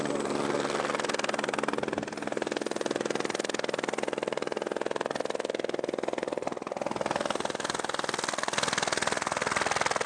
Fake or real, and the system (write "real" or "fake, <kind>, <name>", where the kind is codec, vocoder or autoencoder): real